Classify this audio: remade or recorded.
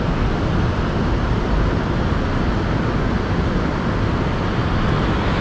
recorded